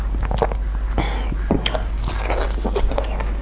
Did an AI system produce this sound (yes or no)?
no